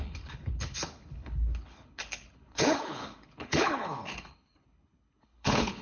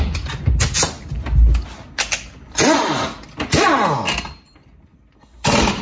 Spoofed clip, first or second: first